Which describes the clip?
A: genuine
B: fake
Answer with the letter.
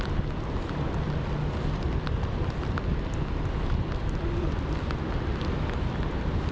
A